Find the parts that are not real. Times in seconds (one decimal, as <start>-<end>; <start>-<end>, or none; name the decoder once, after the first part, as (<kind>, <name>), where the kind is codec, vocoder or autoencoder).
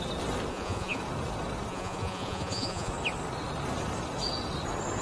0.5-1.0 (vocoder, Vocos); 1.7-2.9